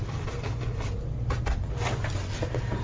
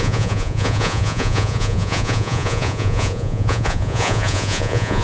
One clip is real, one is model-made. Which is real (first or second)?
first